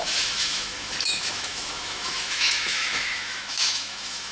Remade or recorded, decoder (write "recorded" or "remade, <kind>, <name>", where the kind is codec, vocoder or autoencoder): remade, autoencoder, DAC-VAE